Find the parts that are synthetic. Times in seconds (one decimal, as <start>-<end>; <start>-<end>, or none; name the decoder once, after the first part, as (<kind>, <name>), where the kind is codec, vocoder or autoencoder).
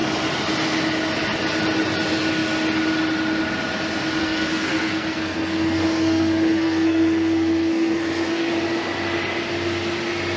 4.2-8.5 (codec, SNAC)